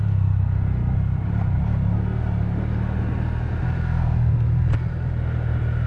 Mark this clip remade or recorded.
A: recorded